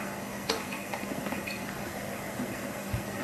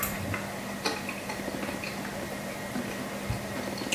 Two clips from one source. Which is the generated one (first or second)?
first